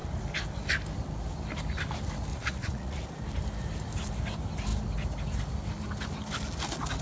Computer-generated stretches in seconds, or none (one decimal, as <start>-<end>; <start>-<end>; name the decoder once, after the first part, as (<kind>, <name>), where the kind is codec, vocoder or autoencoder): 2.3-3.1 (vocoder, Vocos)